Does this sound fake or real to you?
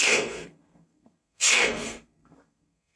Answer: fake